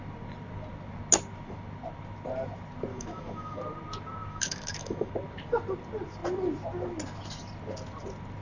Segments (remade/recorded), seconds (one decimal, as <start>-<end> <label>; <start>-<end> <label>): 0.0-2.9 recorded; 2.9-3.6 remade; 3.6-4.3 recorded; 4.3-5.1 remade; 5.1-8.4 recorded